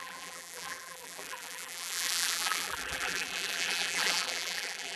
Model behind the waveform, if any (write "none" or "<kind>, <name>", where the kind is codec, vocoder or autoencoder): vocoder, BigVGAN v2